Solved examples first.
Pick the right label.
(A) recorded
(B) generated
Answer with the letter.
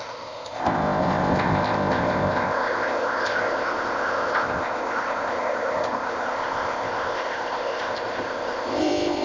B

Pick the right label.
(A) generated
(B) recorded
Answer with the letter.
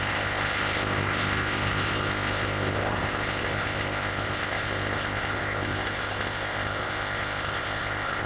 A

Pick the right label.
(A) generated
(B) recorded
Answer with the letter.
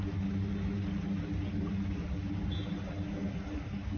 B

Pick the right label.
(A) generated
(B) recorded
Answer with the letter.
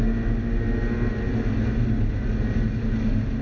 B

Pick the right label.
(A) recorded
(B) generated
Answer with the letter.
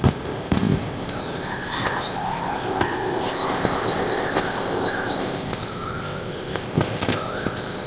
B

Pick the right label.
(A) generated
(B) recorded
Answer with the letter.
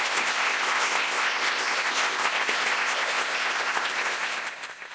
A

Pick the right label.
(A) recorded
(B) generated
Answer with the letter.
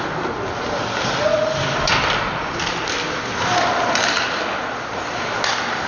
A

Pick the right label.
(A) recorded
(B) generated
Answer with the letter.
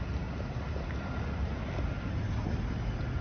A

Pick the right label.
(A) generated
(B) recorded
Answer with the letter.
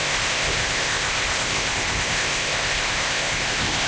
A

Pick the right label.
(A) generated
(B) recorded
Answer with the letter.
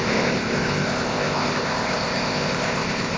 A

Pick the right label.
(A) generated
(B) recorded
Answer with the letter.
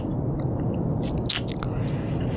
B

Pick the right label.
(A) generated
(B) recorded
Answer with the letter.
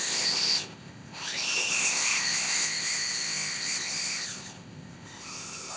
A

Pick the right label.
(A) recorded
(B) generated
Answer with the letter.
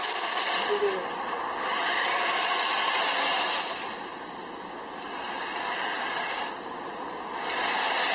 A